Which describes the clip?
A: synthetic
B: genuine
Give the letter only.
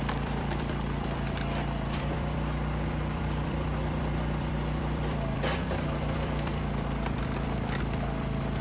A